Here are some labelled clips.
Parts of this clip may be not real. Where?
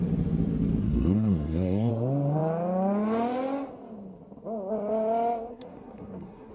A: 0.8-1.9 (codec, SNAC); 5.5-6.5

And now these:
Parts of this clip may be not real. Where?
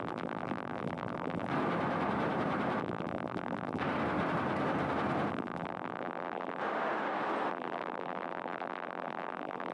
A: 0.0-1.5 (vocoder, BigVGAN v2); 2.8-3.8; 5.3-6.6; 7.5-9.7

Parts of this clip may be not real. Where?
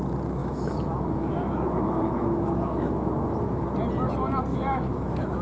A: 0.4-3.6 (autoencoder, DAC-VAE); 4.5-5.4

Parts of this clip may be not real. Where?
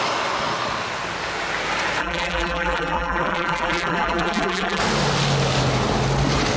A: 2.0-4.8 (vocoder, BigVGAN v2)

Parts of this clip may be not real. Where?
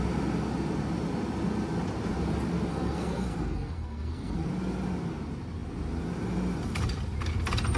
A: 2.7-4.5 (codec, SNAC)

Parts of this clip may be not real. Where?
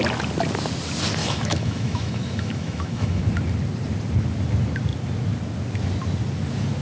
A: 1.2-3.2 (autoencoder, DAC-VAE)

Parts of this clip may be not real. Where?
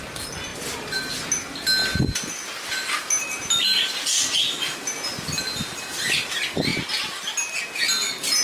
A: 0.5-1.0 (vocoder, BigVGAN v2)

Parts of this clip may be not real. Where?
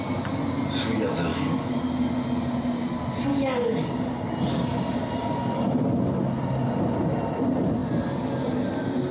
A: 1.3-1.8 (codec, DAC); 3.3-4.3